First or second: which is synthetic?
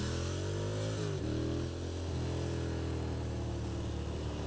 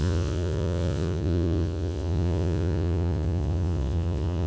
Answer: second